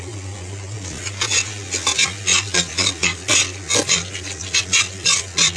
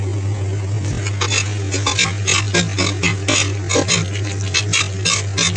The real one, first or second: second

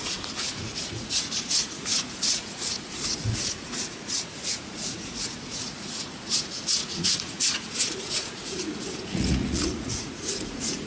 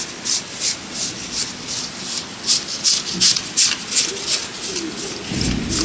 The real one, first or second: second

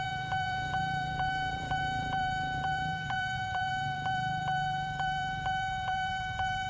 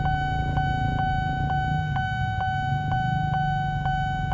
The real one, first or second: second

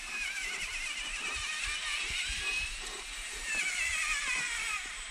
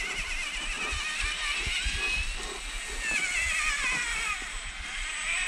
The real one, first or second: second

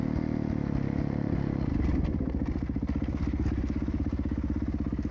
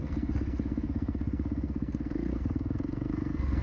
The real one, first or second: first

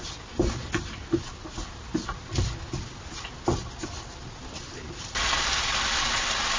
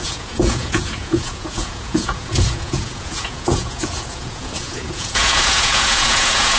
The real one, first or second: first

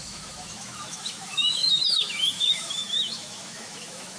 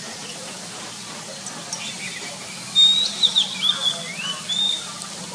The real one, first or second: second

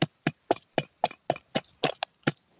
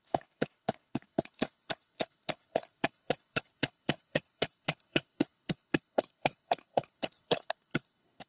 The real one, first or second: first